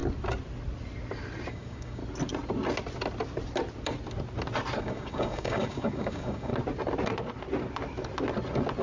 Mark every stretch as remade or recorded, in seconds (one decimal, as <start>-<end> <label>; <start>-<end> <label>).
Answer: 0.0-1.5 recorded; 1.5-2.0 remade; 2.0-4.8 recorded; 4.8-6.5 remade; 6.5-8.8 recorded